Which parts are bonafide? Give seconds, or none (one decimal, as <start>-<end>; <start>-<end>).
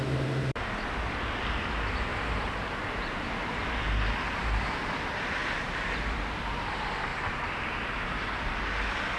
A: 0.0-2.1; 3.9-5.4; 6.6-7.1; 8.3-9.2